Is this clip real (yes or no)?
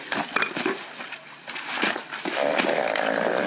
yes